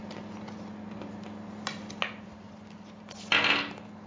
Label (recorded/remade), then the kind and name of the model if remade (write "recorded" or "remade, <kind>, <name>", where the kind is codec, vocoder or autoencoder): recorded